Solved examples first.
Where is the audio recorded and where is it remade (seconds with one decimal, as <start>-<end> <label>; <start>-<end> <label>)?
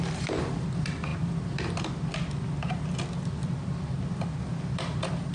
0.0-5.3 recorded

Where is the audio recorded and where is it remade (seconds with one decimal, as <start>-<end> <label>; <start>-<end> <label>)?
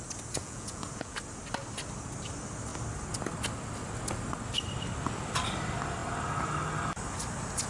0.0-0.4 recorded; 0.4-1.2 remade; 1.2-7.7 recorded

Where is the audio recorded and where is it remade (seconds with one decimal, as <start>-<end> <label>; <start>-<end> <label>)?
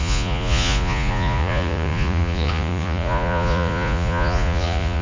0.0-5.0 remade